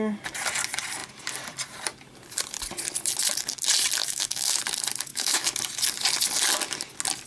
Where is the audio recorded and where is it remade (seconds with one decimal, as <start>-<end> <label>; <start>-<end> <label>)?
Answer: 0.0-4.0 recorded; 4.0-4.6 remade; 4.6-5.1 recorded; 5.1-5.6 remade; 5.6-7.3 recorded